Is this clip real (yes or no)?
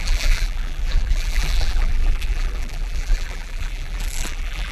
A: no